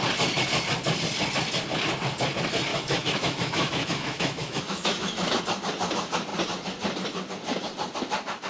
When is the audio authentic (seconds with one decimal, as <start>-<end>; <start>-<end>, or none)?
0.0-2.7; 5.4-8.5